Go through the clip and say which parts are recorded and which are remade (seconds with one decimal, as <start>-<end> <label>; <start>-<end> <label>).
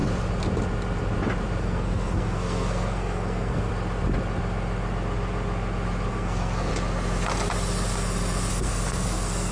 0.0-1.6 recorded; 1.6-3.7 remade; 3.7-6.1 recorded; 6.1-6.7 remade; 6.7-8.5 recorded; 8.5-9.5 remade